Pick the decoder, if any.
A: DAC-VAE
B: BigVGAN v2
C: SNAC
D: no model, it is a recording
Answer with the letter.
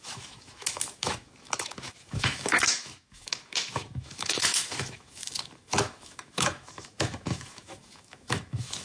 A